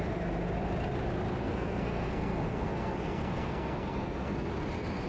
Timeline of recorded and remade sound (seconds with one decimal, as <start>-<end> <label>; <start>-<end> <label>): 0.0-1.4 recorded; 1.4-4.5 remade; 4.5-5.1 recorded